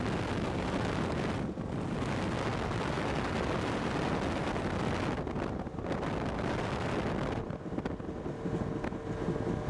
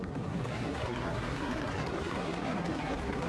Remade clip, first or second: second